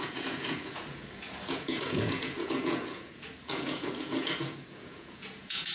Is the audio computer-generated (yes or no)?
yes